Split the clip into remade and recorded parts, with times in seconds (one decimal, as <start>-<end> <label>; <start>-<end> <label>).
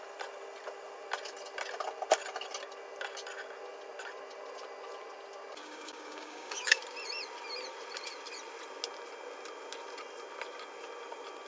0.0-5.6 recorded; 5.6-6.8 remade; 6.8-11.5 recorded